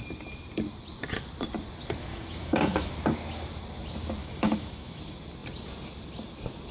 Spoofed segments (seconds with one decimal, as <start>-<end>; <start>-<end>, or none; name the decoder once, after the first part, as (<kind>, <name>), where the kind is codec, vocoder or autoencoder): 2.1-2.9 (autoencoder, DAC-VAE); 4.2-5.0